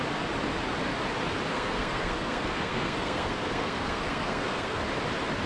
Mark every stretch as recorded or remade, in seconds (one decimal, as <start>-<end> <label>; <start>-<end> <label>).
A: 0.0-1.5 recorded; 1.5-4.8 remade; 4.8-5.5 recorded